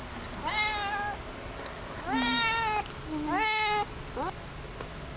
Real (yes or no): yes